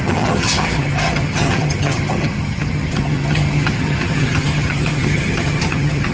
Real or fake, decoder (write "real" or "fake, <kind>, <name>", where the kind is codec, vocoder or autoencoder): fake, vocoder, HiFi-GAN